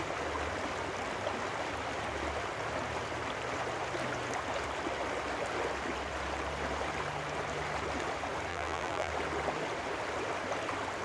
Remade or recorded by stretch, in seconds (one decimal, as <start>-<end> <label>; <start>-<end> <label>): 0.0-8.5 recorded; 8.5-9.1 remade; 9.1-11.0 recorded